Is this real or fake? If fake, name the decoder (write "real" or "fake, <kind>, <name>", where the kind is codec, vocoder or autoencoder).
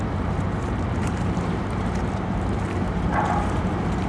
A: fake, vocoder, BigVGAN v2